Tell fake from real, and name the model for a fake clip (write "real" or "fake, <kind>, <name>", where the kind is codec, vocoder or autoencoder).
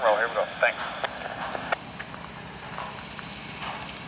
real